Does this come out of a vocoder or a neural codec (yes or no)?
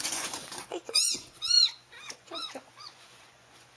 yes